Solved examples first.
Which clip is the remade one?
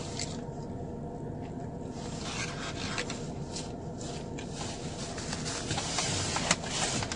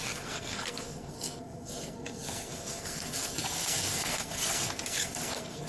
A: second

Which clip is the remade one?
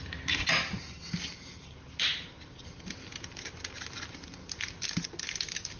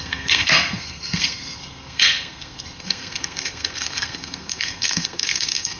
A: second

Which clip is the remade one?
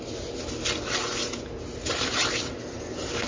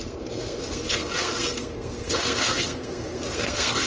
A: second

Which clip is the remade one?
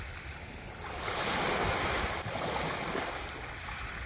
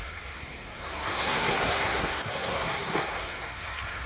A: second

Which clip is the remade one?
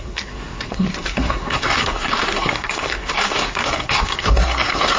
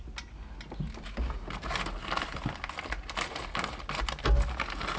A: first